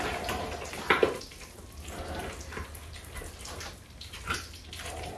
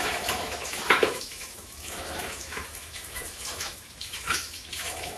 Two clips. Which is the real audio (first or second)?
first